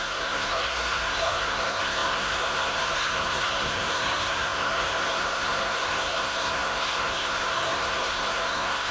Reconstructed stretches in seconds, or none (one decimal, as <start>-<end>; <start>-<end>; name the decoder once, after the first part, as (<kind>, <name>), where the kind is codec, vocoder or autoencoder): 0.0-8.9 (codec, SNAC)